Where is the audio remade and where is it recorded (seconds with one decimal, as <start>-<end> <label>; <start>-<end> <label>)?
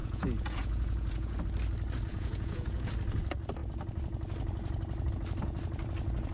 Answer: 0.0-1.4 remade; 1.4-2.1 recorded; 2.1-2.9 remade; 2.9-6.3 recorded